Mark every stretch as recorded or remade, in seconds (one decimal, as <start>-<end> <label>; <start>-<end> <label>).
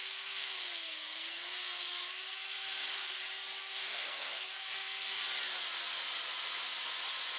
0.0-3.2 remade; 3.2-3.6 recorded; 3.6-5.2 remade; 5.2-7.4 recorded